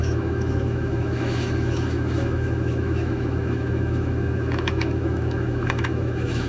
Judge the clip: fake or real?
fake